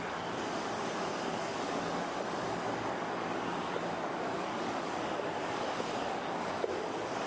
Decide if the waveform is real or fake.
fake